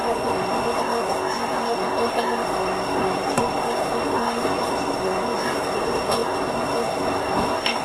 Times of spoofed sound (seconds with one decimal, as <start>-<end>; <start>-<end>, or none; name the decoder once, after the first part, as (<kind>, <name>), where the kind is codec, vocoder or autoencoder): 0.0-7.8 (codec, SNAC)